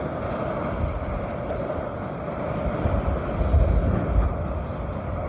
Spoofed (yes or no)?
no